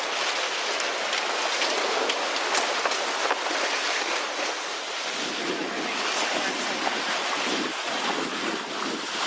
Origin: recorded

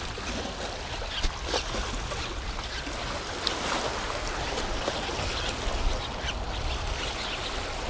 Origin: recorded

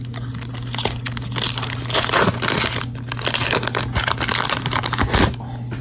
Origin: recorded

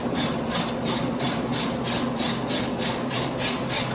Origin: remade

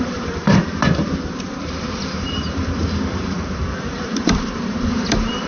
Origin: remade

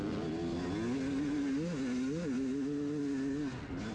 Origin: recorded